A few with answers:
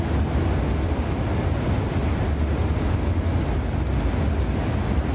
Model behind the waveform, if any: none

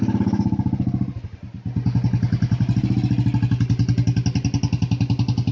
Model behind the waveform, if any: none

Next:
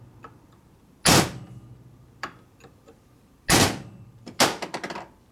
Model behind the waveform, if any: vocoder, BigVGAN v2